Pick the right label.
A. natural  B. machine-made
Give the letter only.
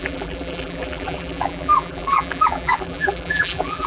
B